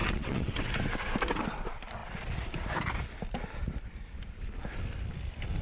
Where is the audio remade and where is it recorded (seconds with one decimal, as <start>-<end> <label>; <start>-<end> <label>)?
0.0-0.7 remade; 0.7-5.6 recorded